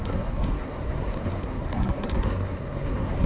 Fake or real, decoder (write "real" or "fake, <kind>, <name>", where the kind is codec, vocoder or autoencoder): fake, codec, SNAC